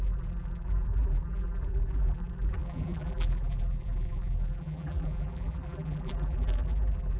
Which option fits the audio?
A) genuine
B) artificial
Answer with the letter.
B